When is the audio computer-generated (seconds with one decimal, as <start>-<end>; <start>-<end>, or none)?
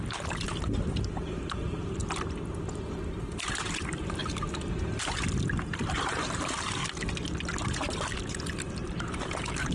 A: 0.0-2.0; 3.5-4.2; 5.9-6.8; 9.0-9.7